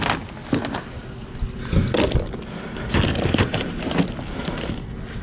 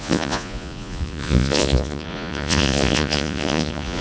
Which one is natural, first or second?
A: first